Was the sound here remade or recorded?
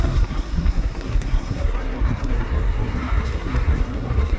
remade